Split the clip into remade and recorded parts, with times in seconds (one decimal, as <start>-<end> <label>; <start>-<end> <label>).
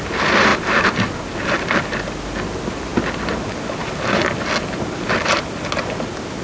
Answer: 0.0-6.4 recorded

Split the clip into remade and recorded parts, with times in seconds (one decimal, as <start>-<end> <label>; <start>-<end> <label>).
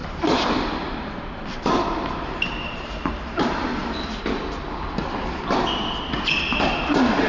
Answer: 0.0-3.4 remade; 3.4-7.3 recorded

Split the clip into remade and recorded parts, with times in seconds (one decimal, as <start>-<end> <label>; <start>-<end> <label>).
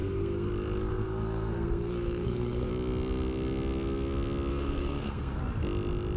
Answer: 0.0-0.5 remade; 0.5-0.9 recorded; 0.9-2.7 remade; 2.7-4.5 recorded; 4.5-5.4 remade; 5.4-6.2 recorded